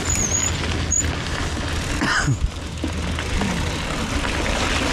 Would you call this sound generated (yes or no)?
no